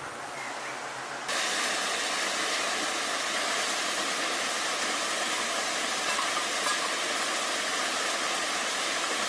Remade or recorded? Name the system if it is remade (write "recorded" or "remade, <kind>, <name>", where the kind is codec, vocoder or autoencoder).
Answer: recorded